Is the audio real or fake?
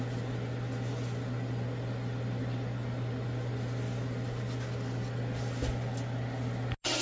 real